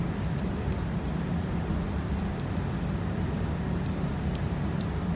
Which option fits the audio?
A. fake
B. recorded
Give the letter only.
B